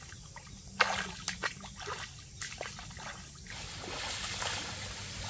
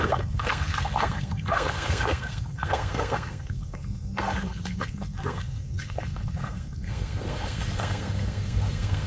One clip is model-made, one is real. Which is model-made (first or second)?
second